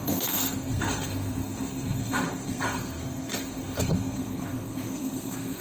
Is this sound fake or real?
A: fake